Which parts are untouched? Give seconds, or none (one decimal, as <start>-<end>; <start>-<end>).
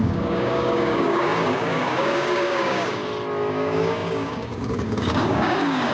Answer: 3.0-3.5